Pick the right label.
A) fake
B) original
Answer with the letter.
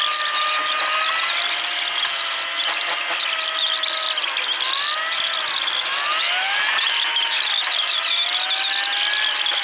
B